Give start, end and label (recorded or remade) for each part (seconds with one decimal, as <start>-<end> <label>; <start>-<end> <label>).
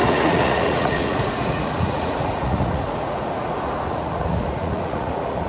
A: 0.0-5.5 remade